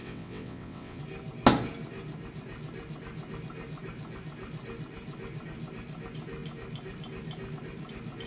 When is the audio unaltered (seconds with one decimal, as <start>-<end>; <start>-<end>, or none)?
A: 1.0-8.3